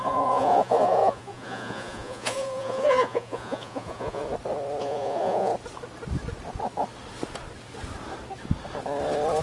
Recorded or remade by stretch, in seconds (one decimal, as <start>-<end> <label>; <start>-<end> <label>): 0.0-4.2 remade; 4.2-4.8 recorded; 4.8-5.5 remade; 5.5-9.4 recorded